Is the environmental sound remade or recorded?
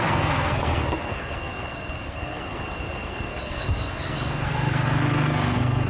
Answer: remade